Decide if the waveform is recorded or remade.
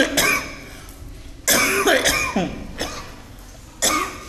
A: recorded